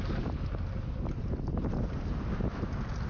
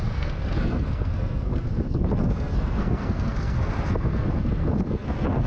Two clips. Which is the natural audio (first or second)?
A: first